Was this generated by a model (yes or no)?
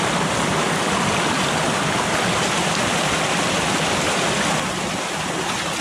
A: no